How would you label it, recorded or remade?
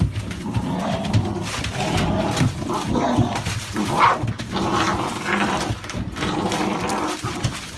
recorded